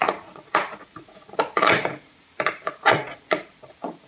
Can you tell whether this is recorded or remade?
remade